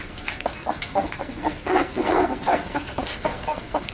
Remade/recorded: remade